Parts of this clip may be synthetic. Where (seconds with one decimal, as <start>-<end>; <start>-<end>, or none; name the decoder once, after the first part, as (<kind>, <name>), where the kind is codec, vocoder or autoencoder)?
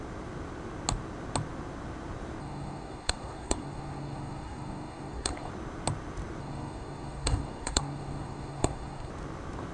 2.4-5.5 (codec, SNAC); 6.4-9.1